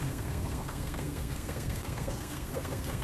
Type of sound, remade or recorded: remade